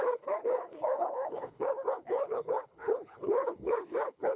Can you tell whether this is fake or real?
fake